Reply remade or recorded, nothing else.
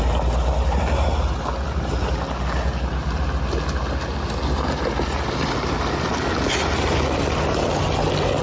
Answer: recorded